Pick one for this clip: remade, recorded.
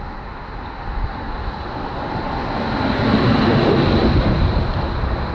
recorded